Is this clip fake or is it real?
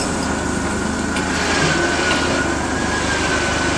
real